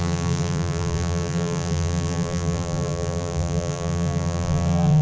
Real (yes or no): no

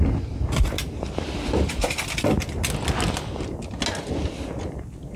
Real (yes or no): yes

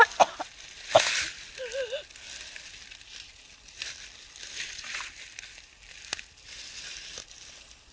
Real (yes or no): yes